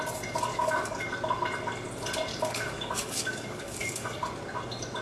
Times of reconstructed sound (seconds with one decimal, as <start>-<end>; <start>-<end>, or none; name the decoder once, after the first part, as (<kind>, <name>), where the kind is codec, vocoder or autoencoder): 0.5-1.1 (codec, DAC); 2.3-4.3